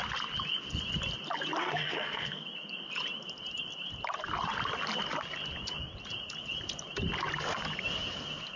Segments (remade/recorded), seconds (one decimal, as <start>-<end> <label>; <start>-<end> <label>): 0.0-1.6 recorded; 1.6-2.4 remade; 2.4-8.6 recorded